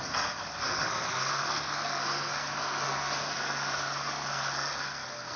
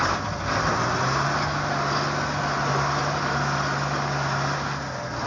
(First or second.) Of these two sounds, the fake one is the first